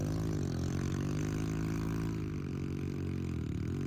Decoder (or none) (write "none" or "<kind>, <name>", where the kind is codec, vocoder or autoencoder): none